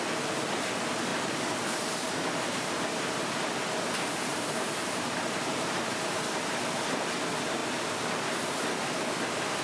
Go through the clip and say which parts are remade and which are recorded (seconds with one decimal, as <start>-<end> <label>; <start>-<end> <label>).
0.0-4.3 recorded; 4.3-6.2 remade; 6.2-9.6 recorded